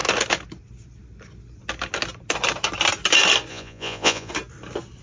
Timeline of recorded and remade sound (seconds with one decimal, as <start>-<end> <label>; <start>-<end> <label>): 0.0-3.5 recorded; 3.5-4.3 remade; 4.3-5.0 recorded

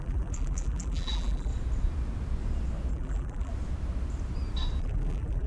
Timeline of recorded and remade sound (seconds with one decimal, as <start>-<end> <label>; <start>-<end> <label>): 0.0-1.5 remade; 1.5-2.9 recorded; 2.9-3.5 remade; 3.5-4.8 recorded; 4.8-5.5 remade

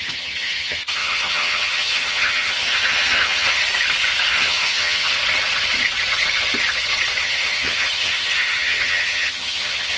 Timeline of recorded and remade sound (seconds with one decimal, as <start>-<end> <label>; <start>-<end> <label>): 0.0-3.6 remade; 3.6-4.3 recorded; 4.3-5.2 remade; 5.2-7.2 recorded; 7.2-10.0 remade

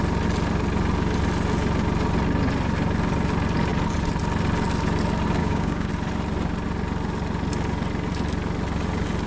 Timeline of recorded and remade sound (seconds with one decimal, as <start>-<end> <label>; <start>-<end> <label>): 0.0-5.4 recorded; 5.4-5.9 remade; 5.9-9.3 recorded

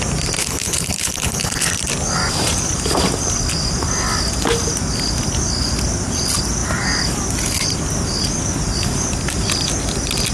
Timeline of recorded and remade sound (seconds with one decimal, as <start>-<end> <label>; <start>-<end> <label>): 0.0-0.4 recorded; 0.4-1.7 remade; 1.7-10.3 recorded

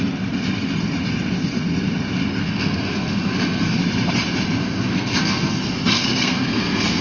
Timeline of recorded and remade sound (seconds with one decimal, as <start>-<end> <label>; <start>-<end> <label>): 0.0-2.4 recorded; 2.4-3.8 remade; 3.8-4.6 recorded; 4.6-7.0 remade

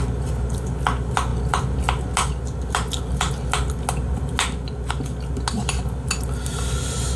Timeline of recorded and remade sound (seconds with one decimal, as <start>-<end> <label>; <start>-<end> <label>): 0.0-7.2 recorded

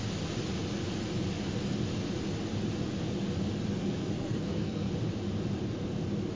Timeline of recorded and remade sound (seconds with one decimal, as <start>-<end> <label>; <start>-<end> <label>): 0.0-3.8 recorded; 3.8-4.9 remade; 4.9-6.4 recorded